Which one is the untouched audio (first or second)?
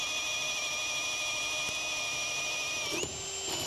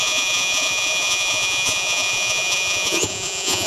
first